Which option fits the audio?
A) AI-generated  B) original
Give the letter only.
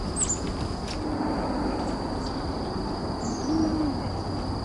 B